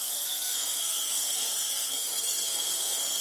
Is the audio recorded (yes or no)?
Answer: no